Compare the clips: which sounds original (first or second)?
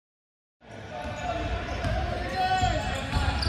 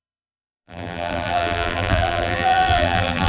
first